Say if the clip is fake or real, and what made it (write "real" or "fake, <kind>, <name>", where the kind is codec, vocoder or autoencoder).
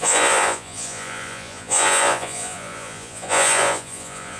fake, vocoder, Vocos